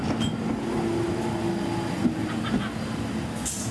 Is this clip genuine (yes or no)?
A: yes